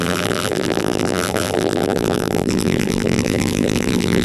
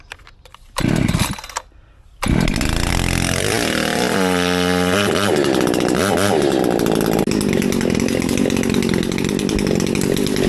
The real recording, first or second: second